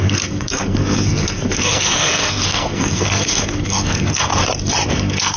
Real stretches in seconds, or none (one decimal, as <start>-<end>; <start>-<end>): 4.3-4.9